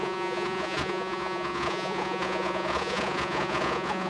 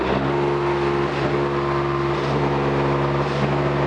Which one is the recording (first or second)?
second